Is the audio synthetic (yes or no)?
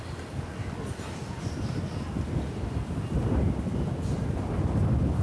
yes